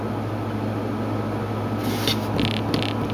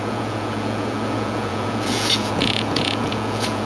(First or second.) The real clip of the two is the first